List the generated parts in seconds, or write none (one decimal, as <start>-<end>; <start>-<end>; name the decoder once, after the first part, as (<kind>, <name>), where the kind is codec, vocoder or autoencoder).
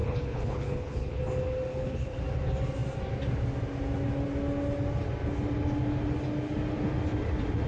0.0-1.2 (codec, HILCodec); 1.7-2.2